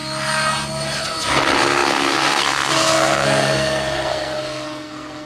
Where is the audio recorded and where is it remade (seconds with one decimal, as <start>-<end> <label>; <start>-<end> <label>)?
0.0-1.3 recorded; 1.3-5.3 remade